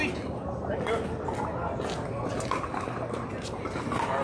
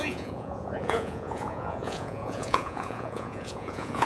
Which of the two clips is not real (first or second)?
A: second